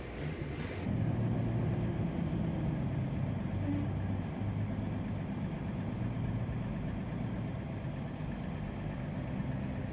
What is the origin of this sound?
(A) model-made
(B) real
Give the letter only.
B